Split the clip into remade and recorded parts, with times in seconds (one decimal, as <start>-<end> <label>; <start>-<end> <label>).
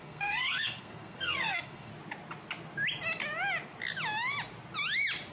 0.0-1.9 remade; 1.9-5.3 recorded